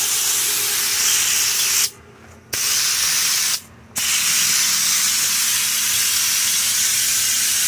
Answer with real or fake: real